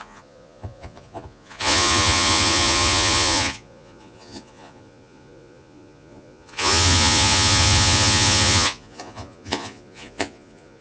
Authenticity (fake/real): fake